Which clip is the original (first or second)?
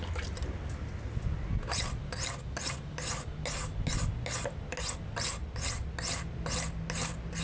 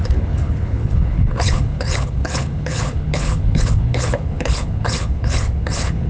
first